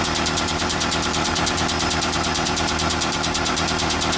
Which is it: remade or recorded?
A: remade